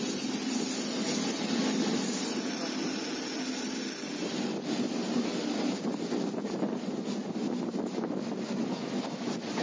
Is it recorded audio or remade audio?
recorded